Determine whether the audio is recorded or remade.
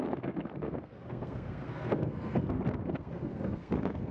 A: remade